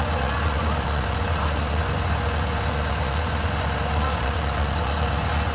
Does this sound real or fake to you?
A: fake